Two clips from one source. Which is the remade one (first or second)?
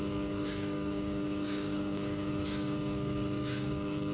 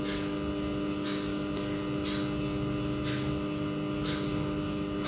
first